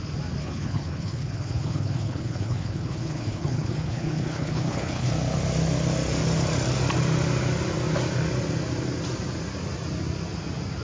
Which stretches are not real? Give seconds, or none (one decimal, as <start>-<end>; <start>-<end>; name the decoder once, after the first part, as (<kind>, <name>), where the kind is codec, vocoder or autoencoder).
0.4-5.1 (codec, HILCodec)